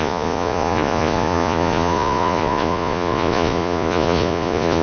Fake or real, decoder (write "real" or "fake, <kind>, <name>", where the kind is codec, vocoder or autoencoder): fake, vocoder, Vocos